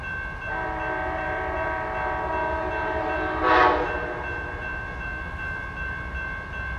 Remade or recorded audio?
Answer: recorded